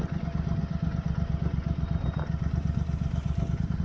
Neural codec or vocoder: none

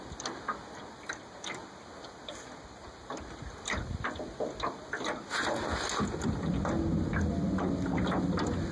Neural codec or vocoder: none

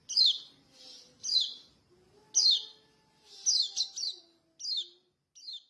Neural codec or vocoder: none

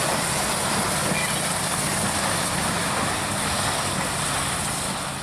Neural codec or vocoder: none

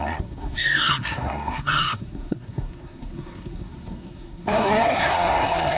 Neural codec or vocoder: codec, SNAC